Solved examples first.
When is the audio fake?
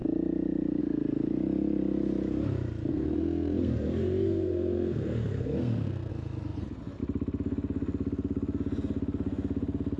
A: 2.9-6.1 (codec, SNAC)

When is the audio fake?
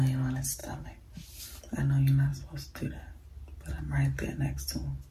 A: 0.6-1.4 (vocoder, BigVGAN v2)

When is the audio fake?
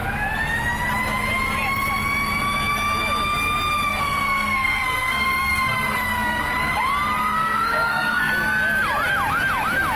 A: 3.9-6.5 (codec, SNAC); 7.2-8.3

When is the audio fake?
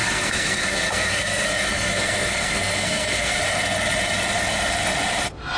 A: 0.0-3.4 (codec, SNAC)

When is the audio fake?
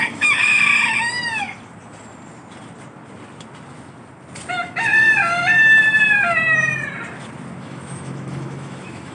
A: 0.0-0.7 (autoencoder, DAC-VAE); 4.5-4.9; 7.6-9.1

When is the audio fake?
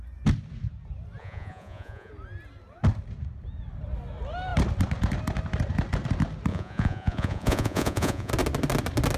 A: 1.2-2.1 (vocoder, Vocos); 6.5-8.3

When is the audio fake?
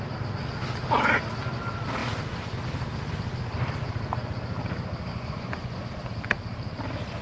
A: 5.1-5.9 (vocoder, Vocos)